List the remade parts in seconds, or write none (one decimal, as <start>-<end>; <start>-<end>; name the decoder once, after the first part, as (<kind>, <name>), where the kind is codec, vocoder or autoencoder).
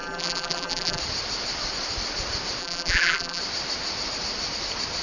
0.0-1.0 (vocoder, BigVGAN v2); 2.6-3.4